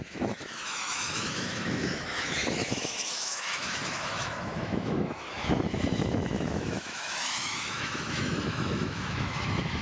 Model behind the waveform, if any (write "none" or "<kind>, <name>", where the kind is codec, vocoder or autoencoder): autoencoder, DAC-VAE